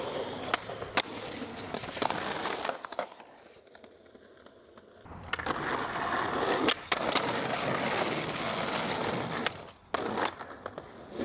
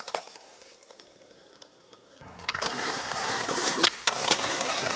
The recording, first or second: first